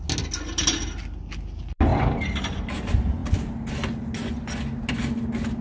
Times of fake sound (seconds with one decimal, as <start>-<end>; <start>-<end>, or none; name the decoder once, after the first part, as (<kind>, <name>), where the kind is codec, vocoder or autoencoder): none